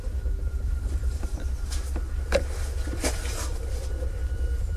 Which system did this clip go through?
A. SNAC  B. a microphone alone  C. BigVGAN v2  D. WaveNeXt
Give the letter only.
C